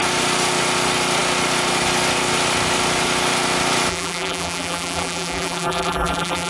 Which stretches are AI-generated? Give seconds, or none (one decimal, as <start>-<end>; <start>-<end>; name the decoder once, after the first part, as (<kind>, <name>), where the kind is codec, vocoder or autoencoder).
3.9-6.5 (vocoder, BigVGAN v2)